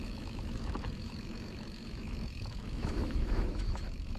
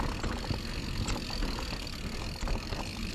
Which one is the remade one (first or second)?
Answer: first